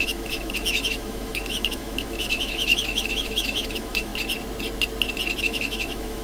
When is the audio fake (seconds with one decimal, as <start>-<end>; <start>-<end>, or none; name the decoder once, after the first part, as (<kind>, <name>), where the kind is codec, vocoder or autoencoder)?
0.0-4.1 (autoencoder, DAC-VAE); 5.4-6.2